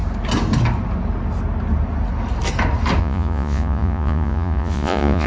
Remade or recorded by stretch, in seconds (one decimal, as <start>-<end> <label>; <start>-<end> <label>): 0.0-3.0 recorded; 3.0-5.3 remade